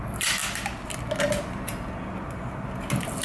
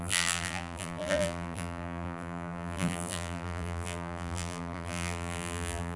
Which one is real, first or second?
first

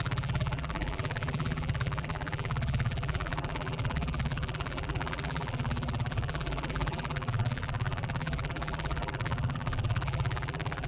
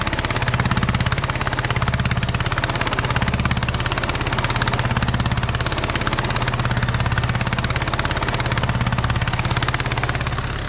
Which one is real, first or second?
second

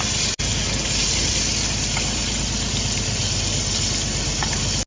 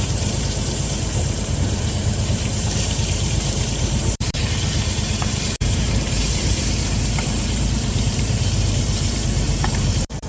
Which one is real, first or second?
first